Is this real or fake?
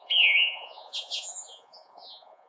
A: fake